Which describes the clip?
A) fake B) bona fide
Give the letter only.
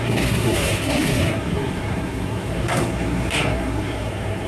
A